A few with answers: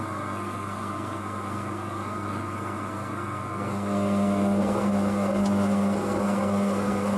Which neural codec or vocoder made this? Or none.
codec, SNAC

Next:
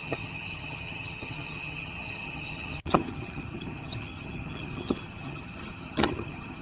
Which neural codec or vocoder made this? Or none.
vocoder, HiFi-GAN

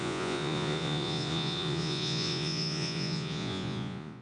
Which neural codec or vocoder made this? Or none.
vocoder, Vocos